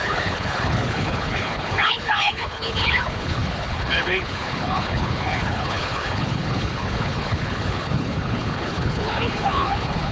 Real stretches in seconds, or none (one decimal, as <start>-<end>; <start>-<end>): none